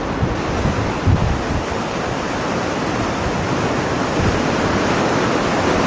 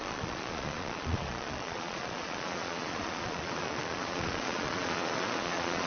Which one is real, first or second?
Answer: first